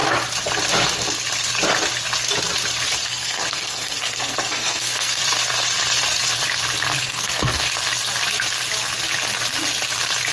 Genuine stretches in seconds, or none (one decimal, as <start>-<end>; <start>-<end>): 0.0-3.0; 5.2-7.0; 7.6-10.3